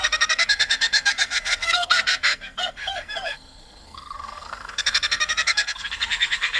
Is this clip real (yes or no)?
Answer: no